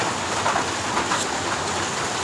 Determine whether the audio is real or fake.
real